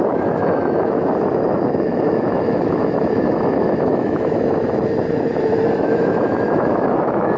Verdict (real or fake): fake